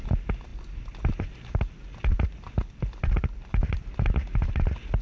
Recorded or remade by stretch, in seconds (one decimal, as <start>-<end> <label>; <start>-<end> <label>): 0.0-5.0 recorded